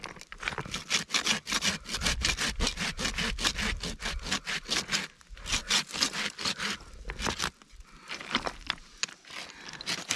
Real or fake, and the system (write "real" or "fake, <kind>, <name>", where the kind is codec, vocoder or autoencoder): real